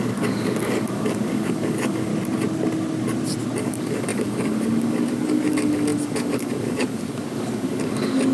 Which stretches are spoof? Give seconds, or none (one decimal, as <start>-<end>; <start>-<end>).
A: 0.0-2.1; 3.6-8.3